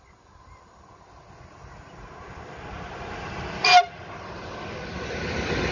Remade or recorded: recorded